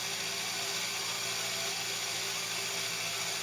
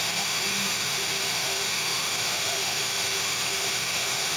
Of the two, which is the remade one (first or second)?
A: second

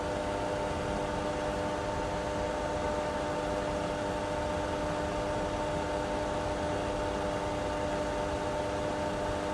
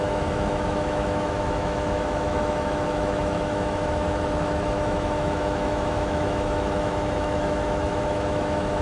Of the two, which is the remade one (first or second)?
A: second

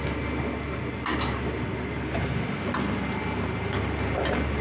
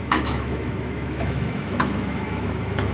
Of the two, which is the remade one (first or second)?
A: second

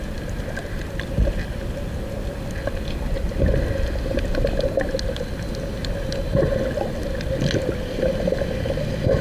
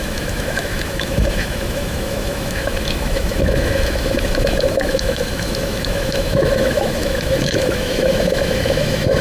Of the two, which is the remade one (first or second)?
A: second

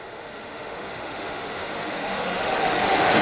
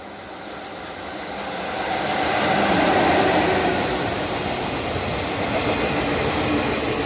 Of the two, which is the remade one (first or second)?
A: first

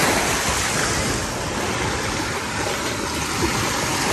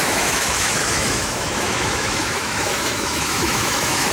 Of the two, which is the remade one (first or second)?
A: second